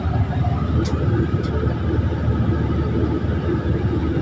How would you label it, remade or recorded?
recorded